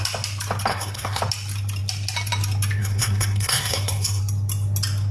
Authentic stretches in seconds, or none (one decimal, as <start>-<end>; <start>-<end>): 0.0-0.7; 1.2-2.8; 4.2-5.1

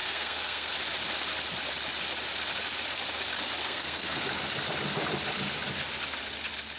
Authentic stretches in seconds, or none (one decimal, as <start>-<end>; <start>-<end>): 0.7-3.6; 4.3-6.8

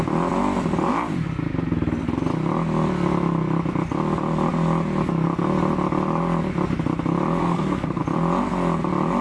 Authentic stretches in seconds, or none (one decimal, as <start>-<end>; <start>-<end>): 0.0-7.4; 8.0-9.2

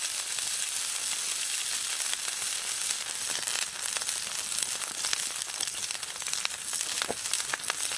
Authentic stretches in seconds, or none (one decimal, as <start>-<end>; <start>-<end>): 0.0-8.0

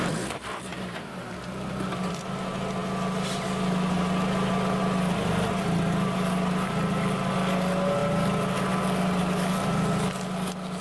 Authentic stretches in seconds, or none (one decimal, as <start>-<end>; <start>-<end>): 0.0-10.8